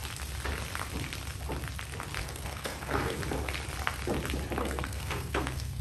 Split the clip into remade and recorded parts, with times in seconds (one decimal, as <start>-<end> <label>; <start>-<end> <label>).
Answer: 0.0-2.2 recorded; 2.2-3.2 remade; 3.2-4.6 recorded; 4.6-5.8 remade